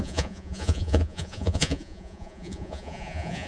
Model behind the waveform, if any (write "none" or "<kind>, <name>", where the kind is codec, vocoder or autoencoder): vocoder, Vocos